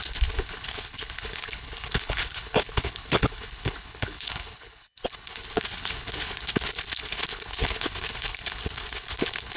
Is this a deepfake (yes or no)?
yes